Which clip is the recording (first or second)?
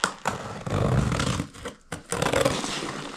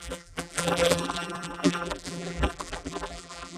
first